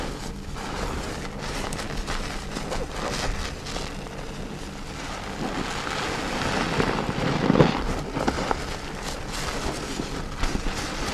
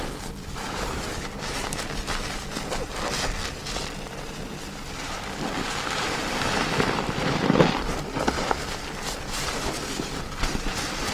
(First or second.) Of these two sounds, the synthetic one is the second